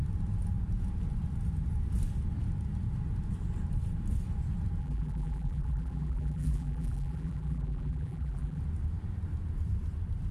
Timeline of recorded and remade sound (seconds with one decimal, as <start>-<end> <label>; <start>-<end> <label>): 0.0-4.8 recorded; 4.8-8.6 remade; 8.6-10.3 recorded

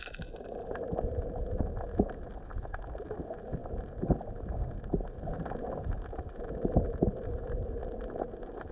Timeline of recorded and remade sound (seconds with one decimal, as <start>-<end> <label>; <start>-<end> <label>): 0.0-8.7 recorded

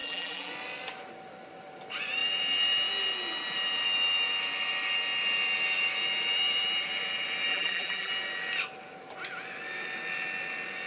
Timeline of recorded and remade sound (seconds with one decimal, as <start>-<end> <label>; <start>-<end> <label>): 0.0-0.5 remade; 0.5-7.5 recorded; 7.5-8.1 remade; 8.1-10.9 recorded

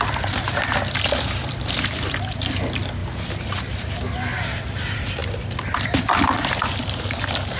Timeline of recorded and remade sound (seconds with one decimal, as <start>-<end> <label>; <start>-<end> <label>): 0.0-3.0 remade; 3.0-4.6 recorded; 4.6-7.6 remade